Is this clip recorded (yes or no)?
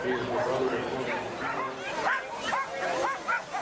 yes